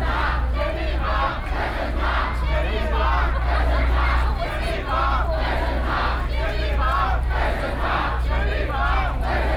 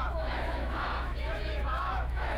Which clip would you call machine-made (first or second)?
second